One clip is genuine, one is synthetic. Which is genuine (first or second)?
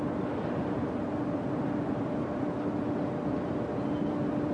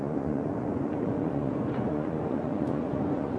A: first